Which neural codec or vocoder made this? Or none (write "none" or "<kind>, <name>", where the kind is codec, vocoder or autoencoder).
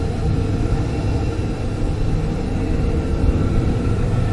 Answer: none